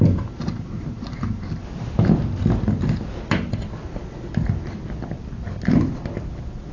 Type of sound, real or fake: real